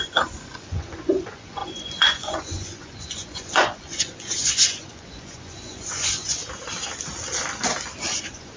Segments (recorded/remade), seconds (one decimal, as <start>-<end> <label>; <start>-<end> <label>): 0.0-6.4 remade; 6.4-8.2 recorded; 8.2-8.6 remade